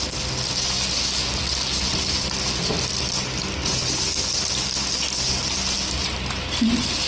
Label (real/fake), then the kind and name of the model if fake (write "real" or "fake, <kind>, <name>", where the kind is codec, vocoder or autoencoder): real